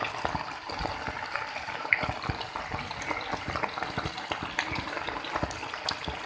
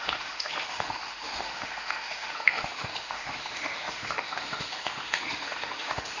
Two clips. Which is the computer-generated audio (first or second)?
second